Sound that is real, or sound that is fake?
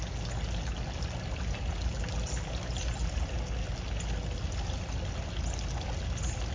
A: real